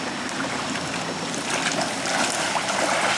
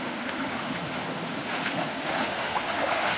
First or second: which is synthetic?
second